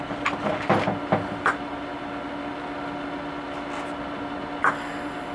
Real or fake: real